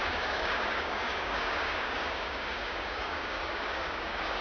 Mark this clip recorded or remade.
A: remade